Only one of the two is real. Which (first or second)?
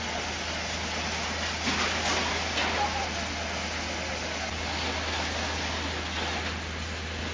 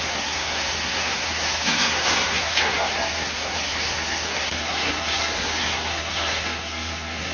first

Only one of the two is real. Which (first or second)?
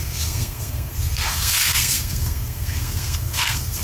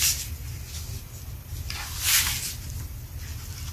second